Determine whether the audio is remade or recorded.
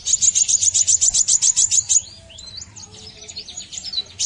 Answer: recorded